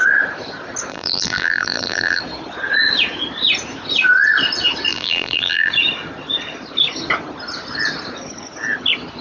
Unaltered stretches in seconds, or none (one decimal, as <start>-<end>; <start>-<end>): 0.0-0.9; 2.2-4.9; 5.7-9.2